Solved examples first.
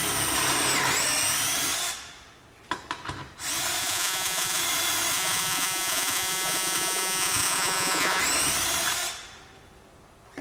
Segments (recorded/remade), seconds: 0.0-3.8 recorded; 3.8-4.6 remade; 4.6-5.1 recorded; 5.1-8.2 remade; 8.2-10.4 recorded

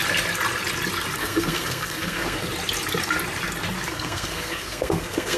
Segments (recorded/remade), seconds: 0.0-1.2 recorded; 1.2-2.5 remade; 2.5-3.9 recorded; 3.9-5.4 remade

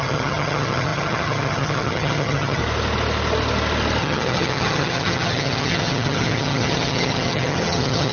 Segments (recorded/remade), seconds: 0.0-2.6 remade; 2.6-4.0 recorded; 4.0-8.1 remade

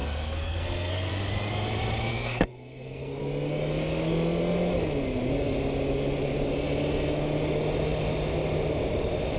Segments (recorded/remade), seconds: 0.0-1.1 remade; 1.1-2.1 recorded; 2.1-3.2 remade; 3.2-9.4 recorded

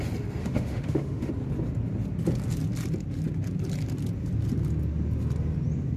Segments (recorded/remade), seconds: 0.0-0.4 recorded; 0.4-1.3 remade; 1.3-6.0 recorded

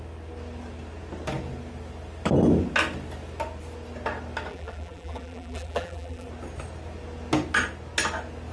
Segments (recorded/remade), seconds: 0.0-4.5 recorded; 4.5-6.3 remade; 6.3-8.5 recorded